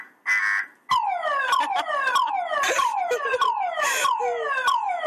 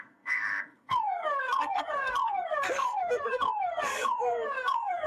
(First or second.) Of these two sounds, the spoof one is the second